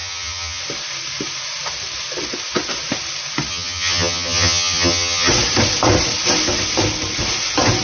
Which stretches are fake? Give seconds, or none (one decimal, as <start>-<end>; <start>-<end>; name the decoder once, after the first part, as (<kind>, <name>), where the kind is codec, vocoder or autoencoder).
0.0-0.6 (vocoder, HiFi-GAN); 3.5-5.3